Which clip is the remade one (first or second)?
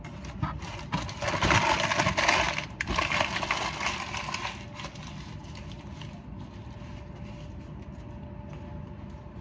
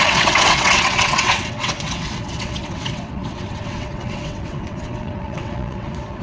second